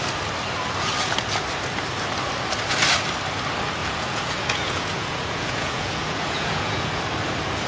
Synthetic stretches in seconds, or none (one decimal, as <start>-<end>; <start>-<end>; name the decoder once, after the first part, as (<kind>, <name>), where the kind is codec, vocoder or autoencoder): 3.8-7.0 (vocoder, Vocos)